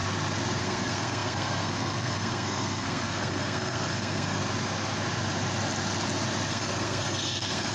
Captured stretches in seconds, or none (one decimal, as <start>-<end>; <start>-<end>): 0.0-0.6; 4.4-6.5